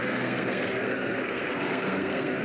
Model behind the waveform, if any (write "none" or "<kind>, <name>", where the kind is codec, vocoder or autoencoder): codec, SNAC